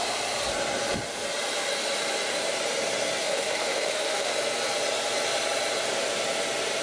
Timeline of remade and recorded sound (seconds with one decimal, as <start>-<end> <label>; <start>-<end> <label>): 0.0-3.2 recorded; 3.2-4.3 remade; 4.3-6.8 recorded